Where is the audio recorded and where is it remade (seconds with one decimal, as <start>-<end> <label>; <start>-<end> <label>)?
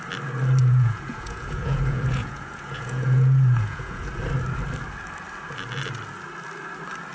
0.0-0.6 recorded; 0.6-4.1 remade; 4.1-7.1 recorded